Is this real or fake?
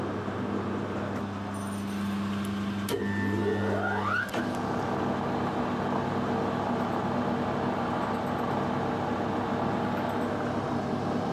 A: real